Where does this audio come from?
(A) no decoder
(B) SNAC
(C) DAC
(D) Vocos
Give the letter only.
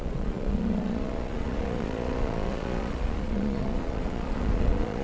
D